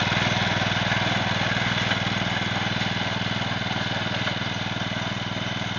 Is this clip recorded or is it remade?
recorded